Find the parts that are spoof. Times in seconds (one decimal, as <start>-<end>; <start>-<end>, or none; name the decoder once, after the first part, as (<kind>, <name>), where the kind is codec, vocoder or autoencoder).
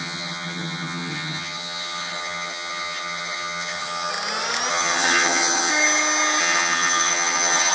0.0-4.1 (vocoder, HiFi-GAN); 4.7-5.7; 6.4-7.7